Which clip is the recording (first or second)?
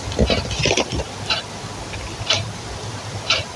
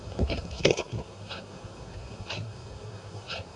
first